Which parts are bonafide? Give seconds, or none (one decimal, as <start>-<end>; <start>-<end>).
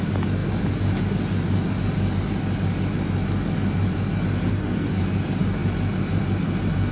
0.0-4.5; 5.0-6.9